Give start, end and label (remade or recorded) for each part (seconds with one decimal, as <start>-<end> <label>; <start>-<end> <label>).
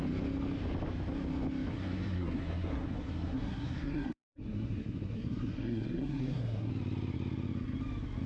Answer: 0.0-1.7 recorded; 1.7-6.7 remade; 6.7-8.3 recorded